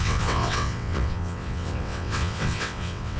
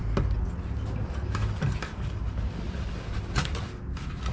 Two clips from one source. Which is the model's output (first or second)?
first